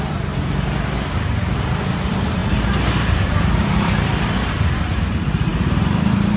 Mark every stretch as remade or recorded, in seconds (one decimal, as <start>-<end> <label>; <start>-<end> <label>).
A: 0.0-2.4 recorded; 2.4-3.9 remade; 3.9-6.4 recorded